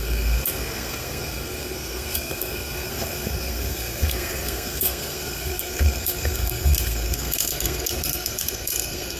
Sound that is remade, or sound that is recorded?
remade